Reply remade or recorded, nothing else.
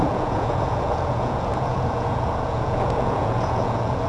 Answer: remade